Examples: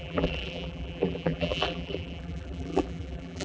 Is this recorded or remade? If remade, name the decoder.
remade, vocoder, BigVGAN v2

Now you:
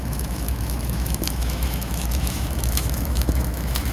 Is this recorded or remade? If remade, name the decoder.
remade, autoencoder, DAC-VAE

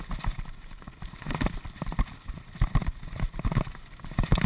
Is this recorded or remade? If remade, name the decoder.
recorded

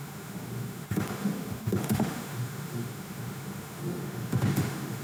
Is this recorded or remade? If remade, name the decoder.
remade, autoencoder, DAC-VAE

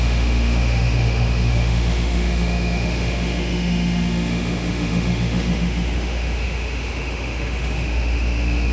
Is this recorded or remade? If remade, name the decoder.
remade, autoencoder, DAC-VAE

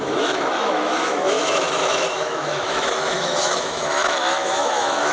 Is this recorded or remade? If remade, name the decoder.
remade, autoencoder, DAC-VAE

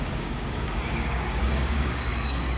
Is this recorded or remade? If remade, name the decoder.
remade, codec, DAC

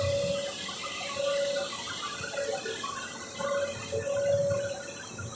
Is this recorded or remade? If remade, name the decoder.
recorded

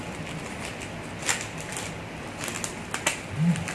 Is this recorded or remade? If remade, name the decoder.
recorded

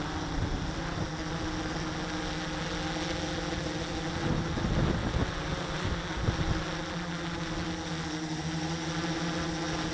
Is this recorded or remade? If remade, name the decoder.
recorded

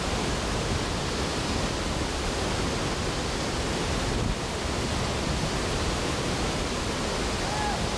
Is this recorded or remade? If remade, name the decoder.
recorded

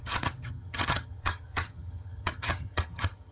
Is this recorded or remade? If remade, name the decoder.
remade, vocoder, HiFi-GAN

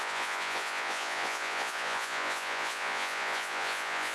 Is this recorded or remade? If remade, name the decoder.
remade, vocoder, Vocos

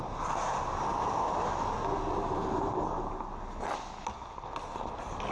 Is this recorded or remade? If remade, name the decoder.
recorded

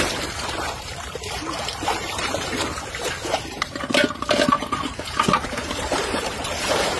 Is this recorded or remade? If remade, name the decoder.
remade, vocoder, BigVGAN v2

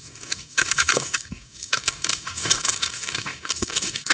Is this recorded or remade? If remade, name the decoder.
remade, codec, DAC